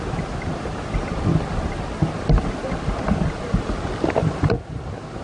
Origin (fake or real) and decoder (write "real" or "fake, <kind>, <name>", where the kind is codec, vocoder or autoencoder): real